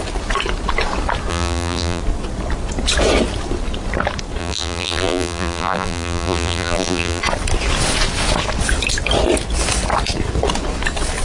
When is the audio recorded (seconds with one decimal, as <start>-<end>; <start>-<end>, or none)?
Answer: 0.0-1.3; 2.0-4.4; 7.2-11.2